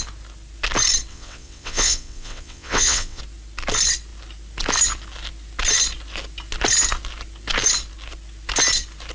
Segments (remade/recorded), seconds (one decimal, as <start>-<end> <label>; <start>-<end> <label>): 0.0-1.1 recorded; 1.1-3.2 remade; 3.2-9.1 recorded

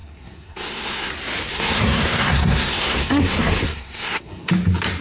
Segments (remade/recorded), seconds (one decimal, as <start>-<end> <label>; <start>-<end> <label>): 0.0-1.1 remade; 1.1-1.5 recorded; 1.5-4.5 remade; 4.5-5.0 recorded

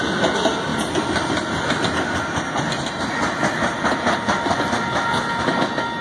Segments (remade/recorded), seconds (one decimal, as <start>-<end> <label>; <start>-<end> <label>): 0.0-6.0 recorded

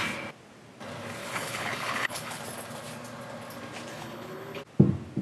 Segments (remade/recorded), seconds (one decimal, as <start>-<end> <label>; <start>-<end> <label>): 0.0-1.2 recorded; 1.2-2.4 remade; 2.4-3.9 recorded; 3.9-4.6 remade; 4.6-5.2 recorded

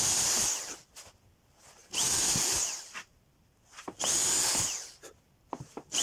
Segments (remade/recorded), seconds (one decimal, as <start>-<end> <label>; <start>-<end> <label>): 0.0-6.0 recorded

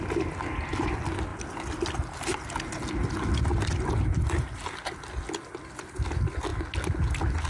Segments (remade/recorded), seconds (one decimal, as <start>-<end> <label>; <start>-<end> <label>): 0.0-7.5 recorded

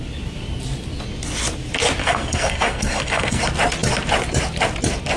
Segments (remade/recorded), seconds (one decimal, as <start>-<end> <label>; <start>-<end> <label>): 0.0-2.0 recorded; 2.0-3.4 remade; 3.4-5.2 recorded

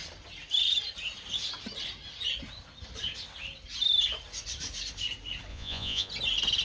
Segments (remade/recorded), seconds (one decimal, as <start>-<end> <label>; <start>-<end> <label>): 0.0-5.5 recorded; 5.5-6.1 remade; 6.1-6.6 recorded